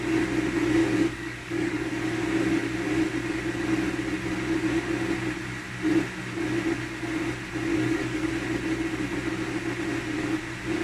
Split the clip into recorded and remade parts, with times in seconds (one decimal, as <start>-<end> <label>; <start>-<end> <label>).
0.0-0.8 recorded; 0.8-1.9 remade; 1.9-7.7 recorded; 7.7-8.3 remade; 8.3-10.8 recorded